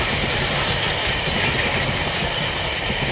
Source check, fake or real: real